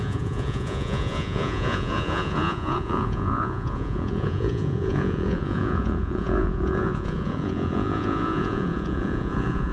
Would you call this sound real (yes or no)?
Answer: no